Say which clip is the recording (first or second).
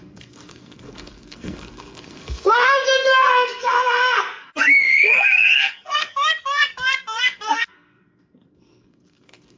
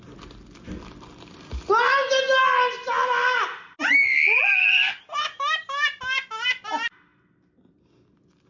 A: second